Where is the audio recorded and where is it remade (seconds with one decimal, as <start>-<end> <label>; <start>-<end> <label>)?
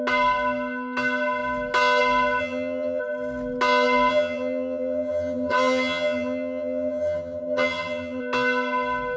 0.0-2.4 recorded; 2.4-3.0 remade; 3.0-4.1 recorded; 4.1-8.2 remade; 8.2-9.2 recorded